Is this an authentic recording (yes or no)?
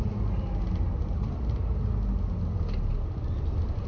yes